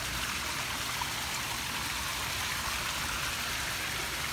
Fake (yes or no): no